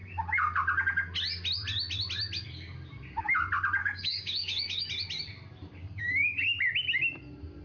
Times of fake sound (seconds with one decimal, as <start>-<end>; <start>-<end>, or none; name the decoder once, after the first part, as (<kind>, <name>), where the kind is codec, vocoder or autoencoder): 3.8-4.9 (codec, DAC); 5.8-6.4